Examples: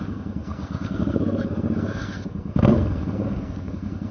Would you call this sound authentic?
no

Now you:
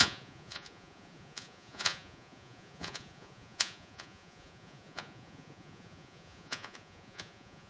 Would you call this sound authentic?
no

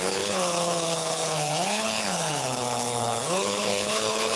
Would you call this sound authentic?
no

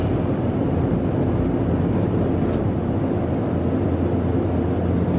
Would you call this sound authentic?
yes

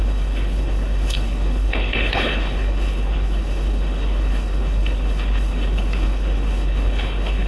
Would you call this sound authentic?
no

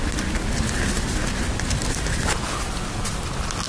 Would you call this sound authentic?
yes